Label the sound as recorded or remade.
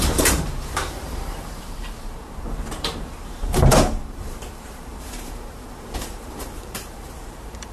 remade